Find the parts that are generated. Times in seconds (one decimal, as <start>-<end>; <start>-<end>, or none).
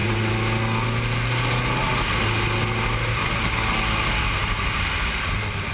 4.4-5.7